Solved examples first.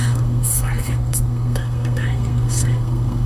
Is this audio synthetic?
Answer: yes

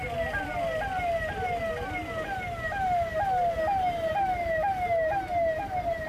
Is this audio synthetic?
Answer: no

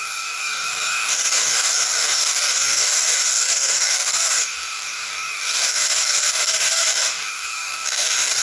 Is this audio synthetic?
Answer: yes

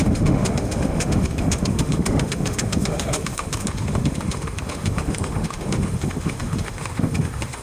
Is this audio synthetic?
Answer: yes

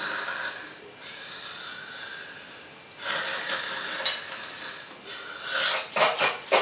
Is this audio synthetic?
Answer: no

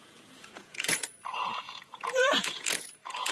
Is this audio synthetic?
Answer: yes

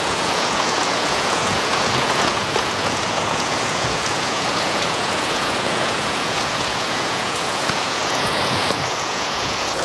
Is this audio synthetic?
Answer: yes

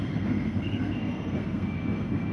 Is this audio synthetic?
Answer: yes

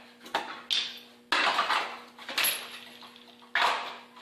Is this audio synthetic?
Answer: no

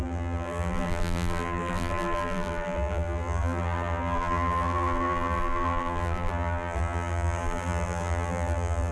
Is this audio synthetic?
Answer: yes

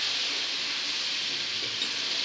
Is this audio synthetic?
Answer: no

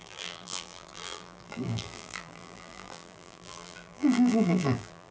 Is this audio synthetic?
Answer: yes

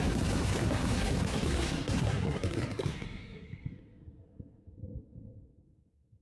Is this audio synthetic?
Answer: yes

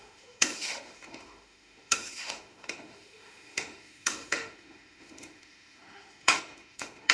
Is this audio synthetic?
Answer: yes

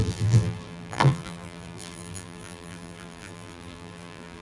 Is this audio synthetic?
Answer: yes